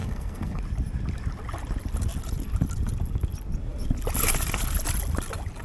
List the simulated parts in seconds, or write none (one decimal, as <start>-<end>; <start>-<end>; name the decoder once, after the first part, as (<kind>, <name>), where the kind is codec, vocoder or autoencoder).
0.0-0.6 (codec, SNAC)